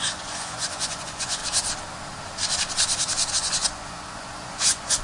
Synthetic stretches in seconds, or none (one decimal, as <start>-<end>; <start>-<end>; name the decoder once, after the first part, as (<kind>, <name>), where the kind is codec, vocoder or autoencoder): 0.0-1.4 (vocoder, Vocos); 3.3-5.0